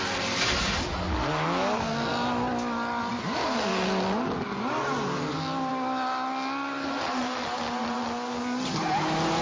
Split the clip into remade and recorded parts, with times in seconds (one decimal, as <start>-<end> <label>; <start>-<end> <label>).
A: 0.0-9.4 recorded